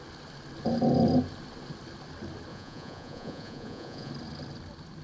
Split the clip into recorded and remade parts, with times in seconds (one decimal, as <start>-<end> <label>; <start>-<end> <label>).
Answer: 0.0-2.5 recorded; 2.5-4.1 remade; 4.1-5.0 recorded